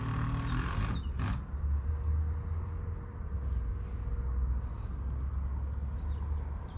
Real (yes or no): yes